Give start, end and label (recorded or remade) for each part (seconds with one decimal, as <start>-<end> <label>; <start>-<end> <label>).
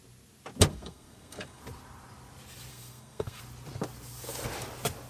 0.0-0.7 recorded; 0.7-1.6 remade; 1.6-2.7 recorded; 2.7-3.4 remade; 3.4-5.1 recorded